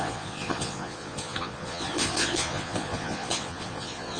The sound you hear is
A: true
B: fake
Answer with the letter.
B